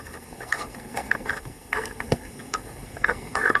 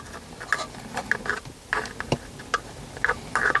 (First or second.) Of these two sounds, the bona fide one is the second